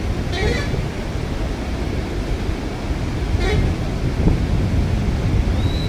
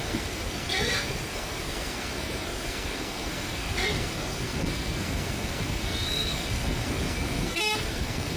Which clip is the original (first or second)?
first